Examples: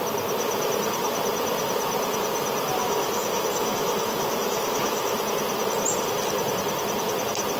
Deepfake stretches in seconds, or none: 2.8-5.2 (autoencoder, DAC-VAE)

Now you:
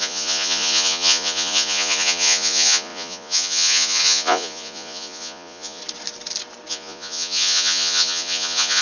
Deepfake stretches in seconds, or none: 0.0-5.8 (vocoder, Vocos); 6.7-8.8

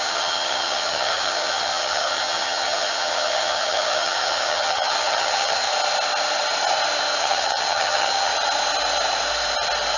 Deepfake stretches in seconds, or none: 0.0-5.7 (vocoder, HiFi-GAN); 7.2-8.3

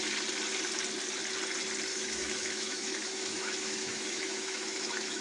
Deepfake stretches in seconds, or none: 1.9-5.2 (autoencoder, DAC-VAE)